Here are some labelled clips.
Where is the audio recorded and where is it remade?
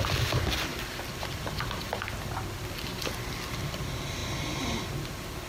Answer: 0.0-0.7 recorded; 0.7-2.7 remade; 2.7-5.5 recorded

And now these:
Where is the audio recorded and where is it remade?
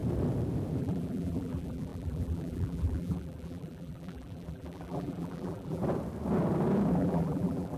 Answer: 0.0-0.8 recorded; 0.8-5.8 remade; 5.8-7.0 recorded; 7.0-7.8 remade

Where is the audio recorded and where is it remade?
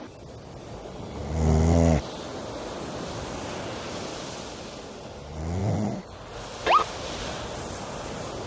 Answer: 0.0-8.5 recorded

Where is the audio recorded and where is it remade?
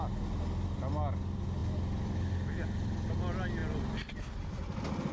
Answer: 0.0-5.1 recorded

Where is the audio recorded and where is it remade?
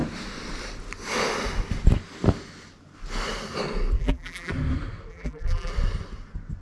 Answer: 0.0-4.0 recorded; 4.0-4.5 remade; 4.5-5.1 recorded; 5.1-5.7 remade; 5.7-6.6 recorded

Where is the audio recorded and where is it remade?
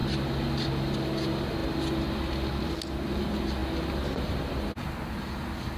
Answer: 0.0-5.8 recorded